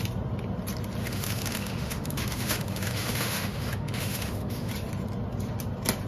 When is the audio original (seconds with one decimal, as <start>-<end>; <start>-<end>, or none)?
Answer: 0.0-1.0; 4.7-6.1